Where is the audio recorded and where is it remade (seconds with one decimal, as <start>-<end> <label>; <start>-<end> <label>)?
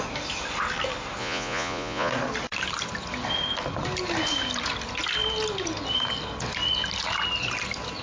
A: 0.0-1.2 recorded; 1.2-2.1 remade; 2.1-8.0 recorded